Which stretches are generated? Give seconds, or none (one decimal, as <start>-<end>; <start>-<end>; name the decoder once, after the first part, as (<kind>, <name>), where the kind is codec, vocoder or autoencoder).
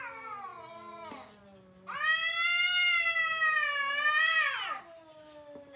none